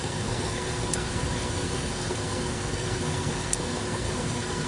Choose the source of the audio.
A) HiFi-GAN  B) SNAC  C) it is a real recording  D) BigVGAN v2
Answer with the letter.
B